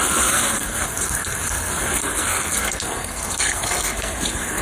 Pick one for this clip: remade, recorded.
remade